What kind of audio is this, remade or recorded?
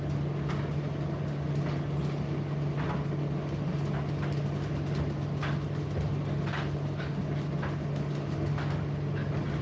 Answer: recorded